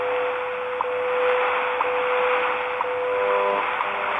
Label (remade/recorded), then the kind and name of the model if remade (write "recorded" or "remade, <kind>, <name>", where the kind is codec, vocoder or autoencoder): recorded